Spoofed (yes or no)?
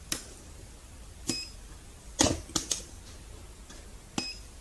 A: no